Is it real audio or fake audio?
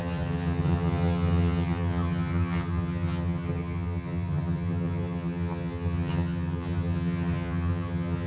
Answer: fake